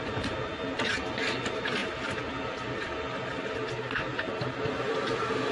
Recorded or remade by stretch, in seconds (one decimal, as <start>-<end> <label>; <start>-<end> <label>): 0.0-5.5 recorded